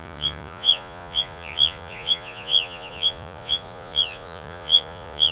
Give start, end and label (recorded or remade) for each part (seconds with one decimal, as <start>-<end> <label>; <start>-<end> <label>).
0.0-5.3 remade

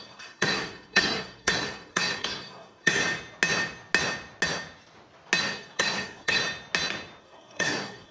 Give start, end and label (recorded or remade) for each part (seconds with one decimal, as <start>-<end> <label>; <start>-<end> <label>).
0.0-3.0 remade; 3.0-5.4 recorded; 5.4-6.4 remade; 6.4-7.2 recorded; 7.2-8.1 remade

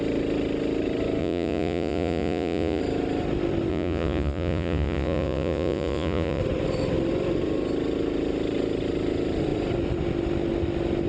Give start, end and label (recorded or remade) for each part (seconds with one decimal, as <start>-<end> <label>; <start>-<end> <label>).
0.0-1.2 recorded; 1.2-2.8 remade; 2.8-3.7 recorded; 3.7-6.4 remade; 6.4-11.1 recorded

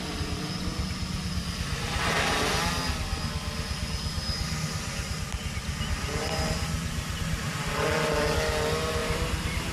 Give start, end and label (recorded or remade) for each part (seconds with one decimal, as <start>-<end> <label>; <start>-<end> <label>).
0.0-6.9 recorded; 6.9-7.5 remade; 7.5-9.0 recorded; 9.0-9.7 remade

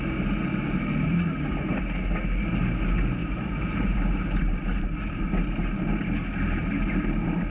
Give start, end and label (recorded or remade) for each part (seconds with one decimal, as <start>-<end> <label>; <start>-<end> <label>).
0.0-0.5 recorded; 0.5-1.8 remade; 1.8-3.2 recorded; 3.2-5.2 remade; 5.2-7.5 recorded